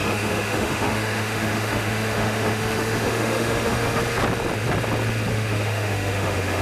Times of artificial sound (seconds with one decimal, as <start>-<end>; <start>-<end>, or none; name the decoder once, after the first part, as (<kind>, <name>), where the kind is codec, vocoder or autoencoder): 0.0-4.0 (autoencoder, DAC-VAE); 5.3-6.6